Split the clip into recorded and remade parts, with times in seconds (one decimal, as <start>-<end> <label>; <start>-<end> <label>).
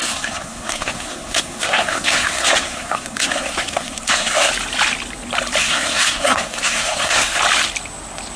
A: 0.0-4.5 remade; 4.5-5.6 recorded; 5.6-7.4 remade; 7.4-8.4 recorded